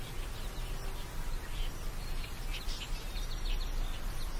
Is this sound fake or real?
real